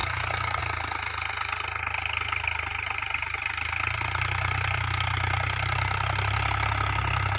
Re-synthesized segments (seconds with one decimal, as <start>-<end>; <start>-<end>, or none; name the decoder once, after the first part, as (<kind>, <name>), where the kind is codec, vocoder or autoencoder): 0.0-0.6 (codec, DAC)